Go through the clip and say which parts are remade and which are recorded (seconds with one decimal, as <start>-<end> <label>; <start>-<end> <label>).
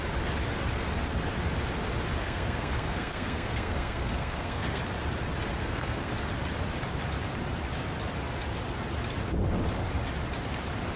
0.0-2.2 recorded; 2.2-4.8 remade; 4.8-5.6 recorded; 5.6-6.1 remade; 6.1-11.0 recorded